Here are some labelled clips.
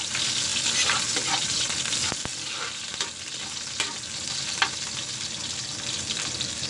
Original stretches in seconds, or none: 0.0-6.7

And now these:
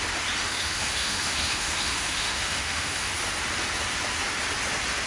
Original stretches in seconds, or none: 0.0-0.4; 3.1-5.1

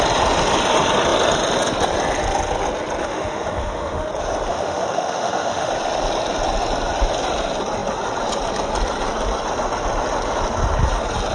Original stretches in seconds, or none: 0.0-3.0; 4.1-4.5; 5.7-11.3